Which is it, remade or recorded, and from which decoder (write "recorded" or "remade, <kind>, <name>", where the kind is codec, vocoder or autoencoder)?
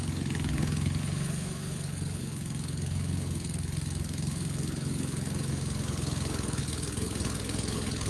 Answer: remade, codec, HILCodec